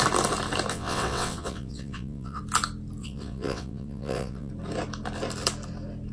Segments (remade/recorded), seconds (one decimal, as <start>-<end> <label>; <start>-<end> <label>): 0.0-0.7 recorded; 0.7-2.4 remade; 2.4-3.0 recorded; 3.0-4.5 remade; 4.5-6.1 recorded